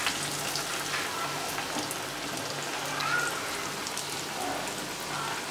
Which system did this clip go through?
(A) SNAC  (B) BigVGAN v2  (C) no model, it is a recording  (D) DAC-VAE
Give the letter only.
C